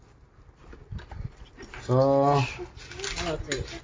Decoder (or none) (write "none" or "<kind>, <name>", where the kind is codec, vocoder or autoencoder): none